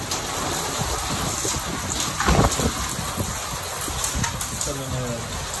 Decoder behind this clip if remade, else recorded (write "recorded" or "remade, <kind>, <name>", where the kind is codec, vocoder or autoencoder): recorded